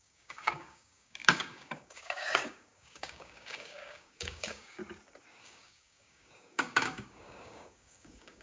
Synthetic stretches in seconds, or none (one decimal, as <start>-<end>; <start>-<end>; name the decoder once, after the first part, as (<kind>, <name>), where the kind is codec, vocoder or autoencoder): 0.0-4.8 (codec, DAC); 5.4-8.4